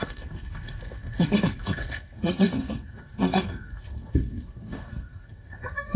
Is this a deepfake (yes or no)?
yes